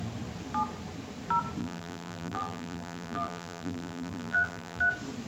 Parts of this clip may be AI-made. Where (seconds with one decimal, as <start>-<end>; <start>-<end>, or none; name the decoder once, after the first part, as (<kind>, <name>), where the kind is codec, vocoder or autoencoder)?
1.6-4.8 (vocoder, BigVGAN v2)